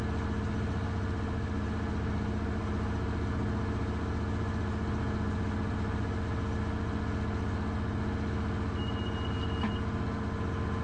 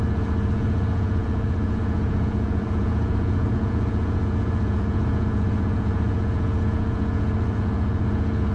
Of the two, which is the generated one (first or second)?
second